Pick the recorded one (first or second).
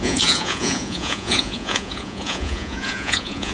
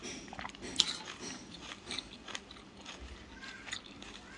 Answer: second